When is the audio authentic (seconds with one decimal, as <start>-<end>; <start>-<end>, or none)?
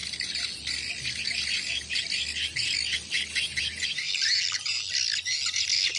0.0-6.0